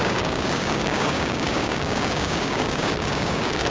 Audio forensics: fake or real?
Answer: fake